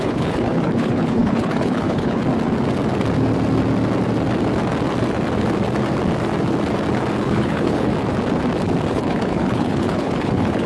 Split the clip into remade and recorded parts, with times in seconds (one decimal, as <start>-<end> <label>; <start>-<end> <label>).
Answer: 0.0-2.2 remade; 2.2-7.2 recorded; 7.2-7.9 remade; 7.9-8.9 recorded; 8.9-10.7 remade